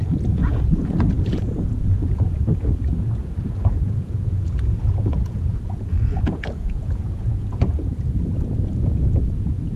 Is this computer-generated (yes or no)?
yes